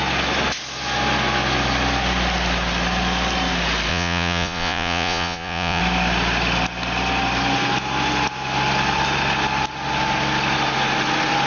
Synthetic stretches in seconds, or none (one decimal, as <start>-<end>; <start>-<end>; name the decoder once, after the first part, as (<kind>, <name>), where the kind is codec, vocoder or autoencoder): 3.9-5.8 (vocoder, Vocos)